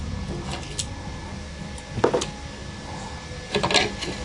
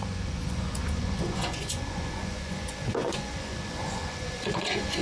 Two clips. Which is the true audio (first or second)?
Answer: first